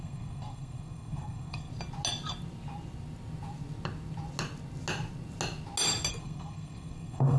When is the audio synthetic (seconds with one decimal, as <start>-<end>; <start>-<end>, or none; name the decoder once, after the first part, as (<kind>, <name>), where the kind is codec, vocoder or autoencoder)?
0.0-1.7 (codec, SNAC); 6.1-7.4